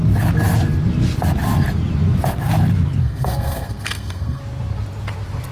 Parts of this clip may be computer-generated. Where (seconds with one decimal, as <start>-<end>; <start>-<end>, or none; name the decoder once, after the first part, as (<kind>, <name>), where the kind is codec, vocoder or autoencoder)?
3.0-4.4 (codec, SNAC)

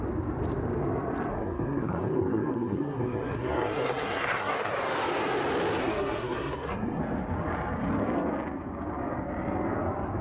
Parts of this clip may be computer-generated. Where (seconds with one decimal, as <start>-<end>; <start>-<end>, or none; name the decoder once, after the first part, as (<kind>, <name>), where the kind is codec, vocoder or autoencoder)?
1.3-4.7 (codec, SNAC); 5.8-7.0